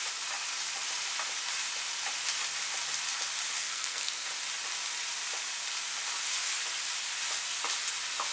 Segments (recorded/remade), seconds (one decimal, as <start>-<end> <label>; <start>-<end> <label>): 0.0-3.6 recorded; 3.6-4.3 remade; 4.3-8.3 recorded